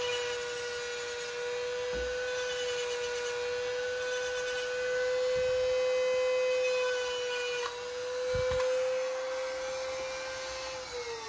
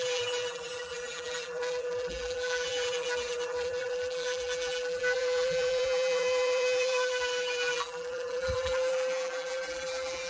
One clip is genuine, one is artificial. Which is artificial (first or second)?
second